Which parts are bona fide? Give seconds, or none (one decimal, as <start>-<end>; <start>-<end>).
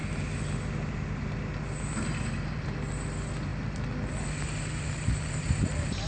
0.0-6.1